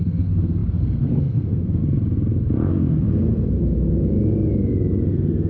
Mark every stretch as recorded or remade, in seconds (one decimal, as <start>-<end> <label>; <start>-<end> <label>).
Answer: 0.0-1.8 remade; 1.8-5.1 recorded; 5.1-5.5 remade